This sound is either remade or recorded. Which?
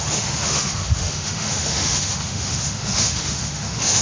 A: remade